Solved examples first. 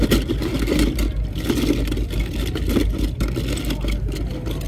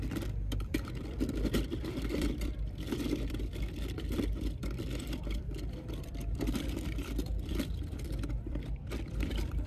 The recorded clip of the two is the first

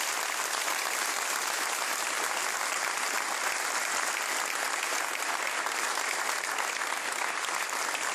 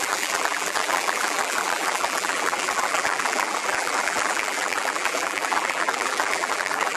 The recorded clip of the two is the first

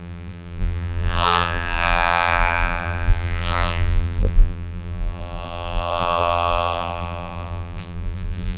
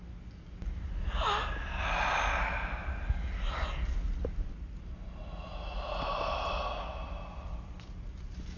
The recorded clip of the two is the second